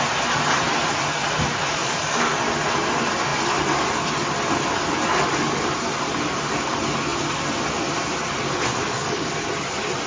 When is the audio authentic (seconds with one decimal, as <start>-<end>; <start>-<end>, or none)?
0.0-1.8; 2.4-8.8; 9.3-10.1